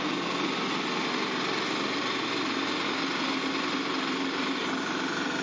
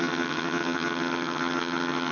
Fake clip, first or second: second